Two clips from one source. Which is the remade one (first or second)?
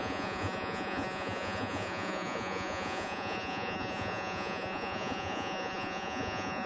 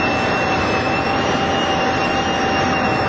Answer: first